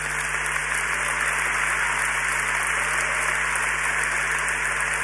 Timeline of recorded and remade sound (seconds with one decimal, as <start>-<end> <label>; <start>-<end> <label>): 0.0-5.0 recorded